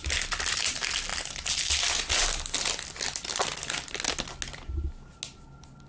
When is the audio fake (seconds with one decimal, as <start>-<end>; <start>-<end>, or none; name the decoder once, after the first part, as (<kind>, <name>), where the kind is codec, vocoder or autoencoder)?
none